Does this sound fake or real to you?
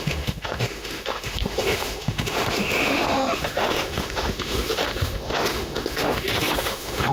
fake